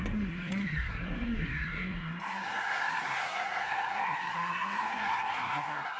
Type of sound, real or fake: fake